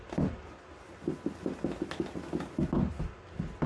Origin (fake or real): real